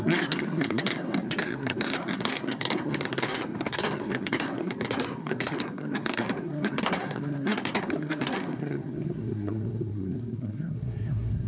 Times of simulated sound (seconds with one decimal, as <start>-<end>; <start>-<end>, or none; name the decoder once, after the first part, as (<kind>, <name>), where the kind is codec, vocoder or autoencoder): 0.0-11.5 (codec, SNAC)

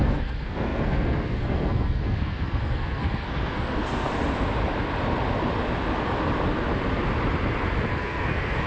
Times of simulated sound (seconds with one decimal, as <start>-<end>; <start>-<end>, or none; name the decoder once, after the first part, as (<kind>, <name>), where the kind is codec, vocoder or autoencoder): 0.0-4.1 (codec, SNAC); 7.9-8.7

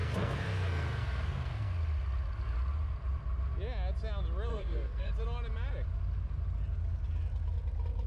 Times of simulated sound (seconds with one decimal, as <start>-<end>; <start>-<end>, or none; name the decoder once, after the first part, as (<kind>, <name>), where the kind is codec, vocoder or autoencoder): 0.0-1.8 (codec, SNAC); 4.5-5.1

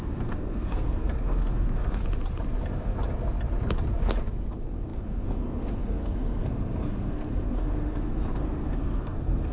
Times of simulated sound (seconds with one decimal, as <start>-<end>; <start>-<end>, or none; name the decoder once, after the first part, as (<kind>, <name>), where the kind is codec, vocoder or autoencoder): 0.0-2.0 (codec, SNAC); 4.5-9.5

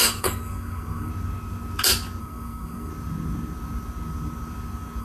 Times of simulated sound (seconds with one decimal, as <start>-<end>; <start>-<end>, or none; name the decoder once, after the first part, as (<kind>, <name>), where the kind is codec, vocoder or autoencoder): 0.0-1.1 (codec, SNAC); 2.2-2.9

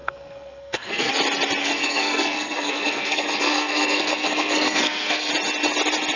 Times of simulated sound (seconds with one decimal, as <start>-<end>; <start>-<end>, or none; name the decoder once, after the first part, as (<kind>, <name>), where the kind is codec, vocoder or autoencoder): 0.0-1.1 (codec, SNAC); 1.6-5.3

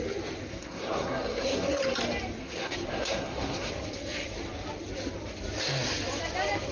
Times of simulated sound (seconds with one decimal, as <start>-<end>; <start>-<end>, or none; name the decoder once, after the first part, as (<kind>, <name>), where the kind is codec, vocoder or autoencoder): 0.5-1.8 (codec, SNAC); 2.4-3.7

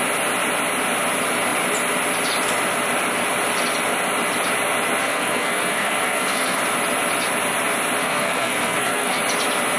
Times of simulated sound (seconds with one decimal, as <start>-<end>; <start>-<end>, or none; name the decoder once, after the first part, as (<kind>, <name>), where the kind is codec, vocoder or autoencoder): 5.0-6.6 (codec, SNAC); 8.0-9.2